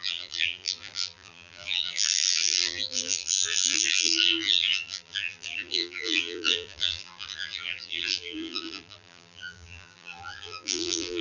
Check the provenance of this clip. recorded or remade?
remade